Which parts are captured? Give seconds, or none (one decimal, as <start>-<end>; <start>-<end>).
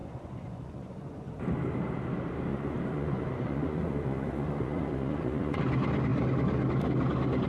1.3-2.5; 5.6-7.5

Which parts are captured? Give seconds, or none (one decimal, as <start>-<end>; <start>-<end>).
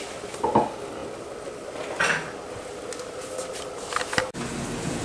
0.0-5.0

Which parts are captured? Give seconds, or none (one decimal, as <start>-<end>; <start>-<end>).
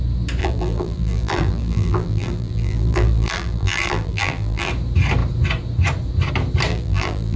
0.0-0.4; 4.7-6.7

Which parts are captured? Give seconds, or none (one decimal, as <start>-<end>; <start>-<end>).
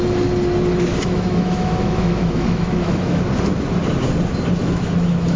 0.0-0.9; 3.2-4.6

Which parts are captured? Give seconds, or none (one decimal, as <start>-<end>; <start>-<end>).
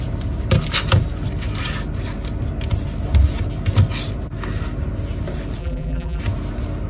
0.0-5.6; 6.2-6.9